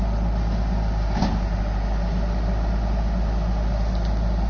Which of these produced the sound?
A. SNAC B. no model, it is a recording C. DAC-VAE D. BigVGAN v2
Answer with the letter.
B